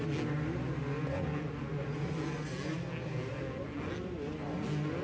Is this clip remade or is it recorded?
recorded